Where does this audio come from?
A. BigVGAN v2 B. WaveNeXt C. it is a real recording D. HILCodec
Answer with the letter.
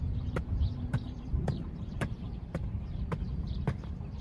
A